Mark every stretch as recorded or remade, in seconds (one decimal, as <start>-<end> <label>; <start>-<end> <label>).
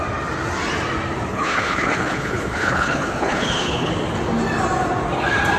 0.0-1.3 recorded; 1.3-3.9 remade; 3.9-5.6 recorded